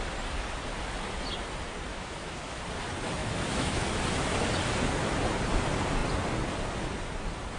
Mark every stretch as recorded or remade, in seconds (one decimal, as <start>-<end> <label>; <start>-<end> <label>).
0.0-1.9 recorded; 1.9-2.6 remade; 2.6-3.2 recorded; 3.2-3.8 remade; 3.8-7.6 recorded